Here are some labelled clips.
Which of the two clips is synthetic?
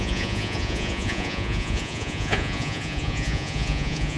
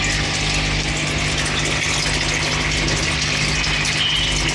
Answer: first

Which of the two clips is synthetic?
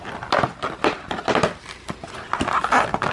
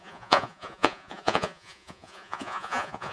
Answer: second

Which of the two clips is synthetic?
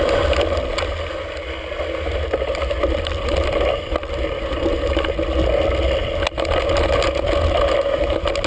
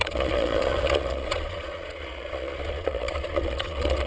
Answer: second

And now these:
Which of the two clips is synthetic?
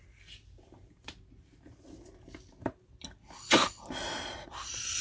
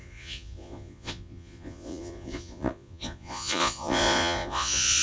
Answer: second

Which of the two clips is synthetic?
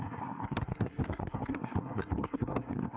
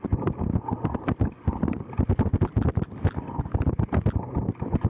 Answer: first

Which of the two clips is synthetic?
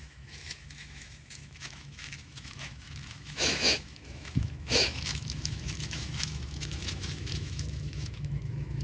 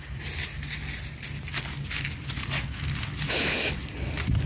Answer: first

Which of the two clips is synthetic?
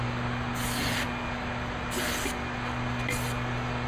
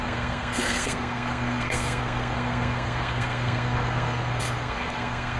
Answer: second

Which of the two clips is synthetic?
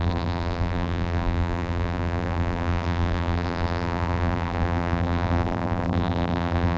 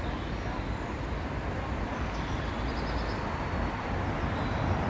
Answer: first